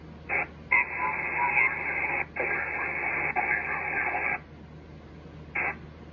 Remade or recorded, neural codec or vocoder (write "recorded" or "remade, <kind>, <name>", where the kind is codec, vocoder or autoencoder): recorded